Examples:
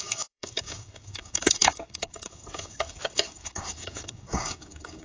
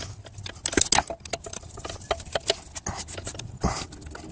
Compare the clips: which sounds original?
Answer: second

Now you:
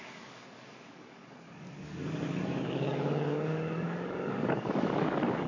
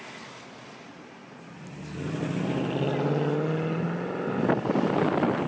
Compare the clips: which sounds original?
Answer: second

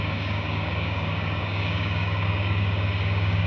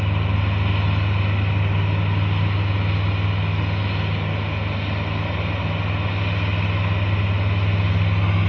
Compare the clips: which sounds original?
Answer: second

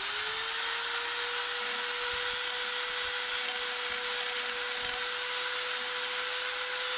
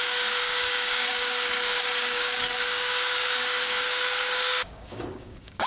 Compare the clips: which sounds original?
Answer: first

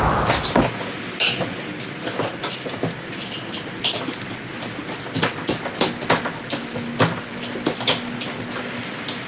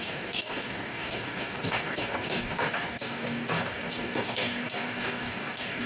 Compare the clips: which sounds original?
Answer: first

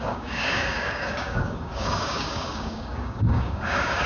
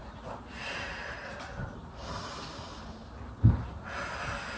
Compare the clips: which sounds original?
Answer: second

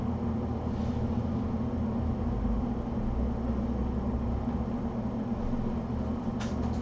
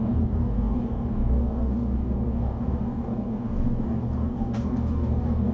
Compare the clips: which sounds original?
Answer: first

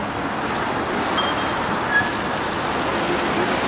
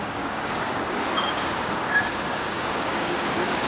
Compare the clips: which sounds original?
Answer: first